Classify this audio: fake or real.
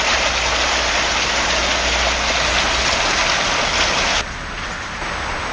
real